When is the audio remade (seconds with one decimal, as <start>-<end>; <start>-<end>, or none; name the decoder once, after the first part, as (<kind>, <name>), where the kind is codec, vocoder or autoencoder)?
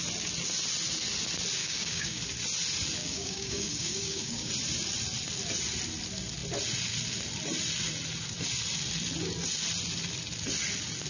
1.6-2.2 (codec, DAC); 3.0-4.5